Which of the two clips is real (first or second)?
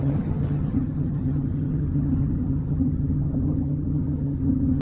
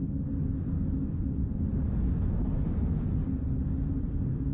second